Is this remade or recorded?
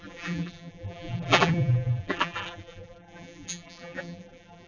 remade